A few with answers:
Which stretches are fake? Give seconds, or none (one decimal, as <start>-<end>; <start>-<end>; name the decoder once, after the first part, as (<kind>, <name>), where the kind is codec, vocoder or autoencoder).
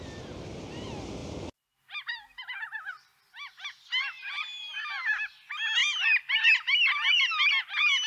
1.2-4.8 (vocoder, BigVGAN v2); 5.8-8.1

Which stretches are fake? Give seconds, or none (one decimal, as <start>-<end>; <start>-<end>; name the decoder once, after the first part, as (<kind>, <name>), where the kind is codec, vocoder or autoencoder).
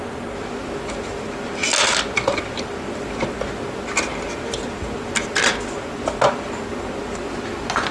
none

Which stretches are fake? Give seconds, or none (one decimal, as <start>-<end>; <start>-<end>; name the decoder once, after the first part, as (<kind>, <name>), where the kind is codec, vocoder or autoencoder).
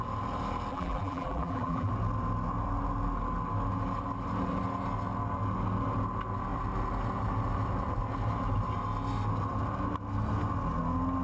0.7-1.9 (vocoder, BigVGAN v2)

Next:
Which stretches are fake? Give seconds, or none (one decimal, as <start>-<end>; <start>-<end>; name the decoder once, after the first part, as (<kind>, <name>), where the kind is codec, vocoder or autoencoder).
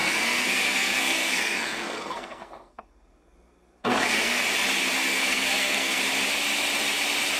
0.0-4.4 (codec, SNAC); 5.0-6.0